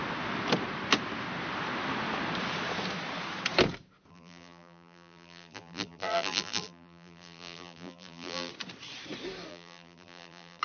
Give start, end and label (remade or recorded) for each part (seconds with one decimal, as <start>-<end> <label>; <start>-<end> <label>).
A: 0.0-4.1 recorded; 4.1-8.5 remade; 8.5-9.5 recorded; 9.5-10.6 remade